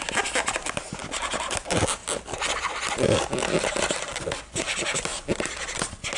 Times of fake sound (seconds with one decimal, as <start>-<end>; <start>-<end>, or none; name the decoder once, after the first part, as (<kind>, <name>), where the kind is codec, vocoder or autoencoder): none